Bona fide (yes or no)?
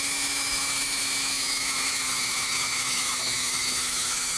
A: no